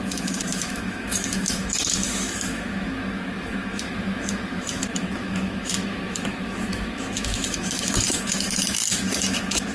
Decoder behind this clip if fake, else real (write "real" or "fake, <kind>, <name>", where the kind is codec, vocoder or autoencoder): fake, autoencoder, DAC-VAE